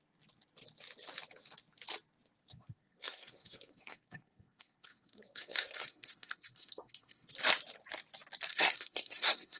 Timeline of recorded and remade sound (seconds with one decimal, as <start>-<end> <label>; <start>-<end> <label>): 0.0-2.4 recorded; 2.4-7.3 remade; 7.3-8.5 recorded; 8.5-9.6 remade